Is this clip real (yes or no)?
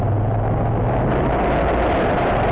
yes